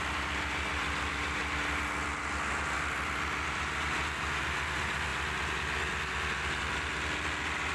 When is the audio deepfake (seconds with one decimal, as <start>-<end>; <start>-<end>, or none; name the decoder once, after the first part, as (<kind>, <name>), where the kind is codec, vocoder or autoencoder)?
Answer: none